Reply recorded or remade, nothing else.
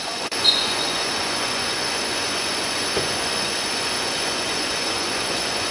remade